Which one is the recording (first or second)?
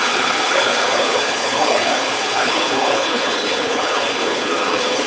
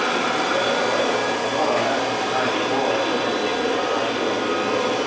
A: second